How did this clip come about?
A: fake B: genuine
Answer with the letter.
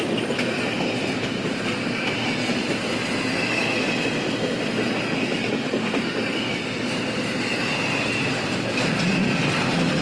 B